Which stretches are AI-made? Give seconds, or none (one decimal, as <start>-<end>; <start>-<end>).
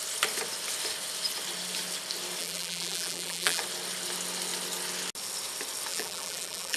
2.4-3.6; 5.9-6.8